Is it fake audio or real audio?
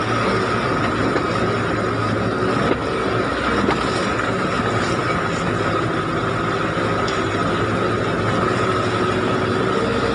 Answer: real